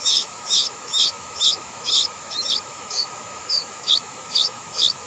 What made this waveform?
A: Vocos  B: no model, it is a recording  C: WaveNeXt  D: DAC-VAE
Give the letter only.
D